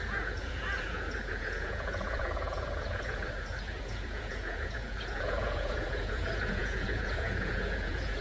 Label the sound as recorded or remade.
remade